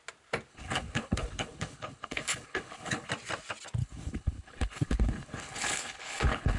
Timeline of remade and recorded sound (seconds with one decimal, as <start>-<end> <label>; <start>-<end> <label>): 0.0-0.5 recorded; 0.5-3.1 remade; 3.1-3.8 recorded; 3.8-6.6 remade